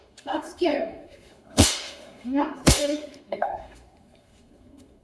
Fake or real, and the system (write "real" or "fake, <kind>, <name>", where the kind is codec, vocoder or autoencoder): fake, codec, SNAC